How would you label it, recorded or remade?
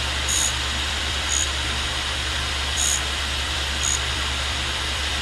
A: remade